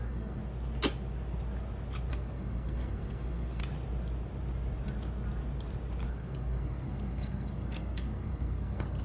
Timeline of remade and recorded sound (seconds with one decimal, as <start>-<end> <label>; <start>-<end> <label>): 0.0-0.4 remade; 0.4-2.1 recorded; 2.1-3.6 remade; 3.6-6.1 recorded; 6.1-9.0 remade